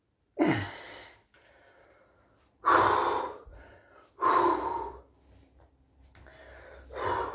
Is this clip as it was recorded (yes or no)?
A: yes